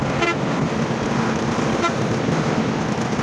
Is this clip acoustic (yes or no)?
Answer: yes